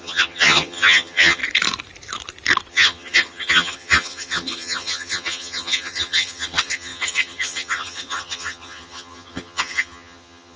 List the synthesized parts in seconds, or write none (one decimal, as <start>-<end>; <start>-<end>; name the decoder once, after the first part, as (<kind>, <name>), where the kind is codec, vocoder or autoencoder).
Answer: 0.0-1.4 (vocoder, HiFi-GAN); 2.7-10.6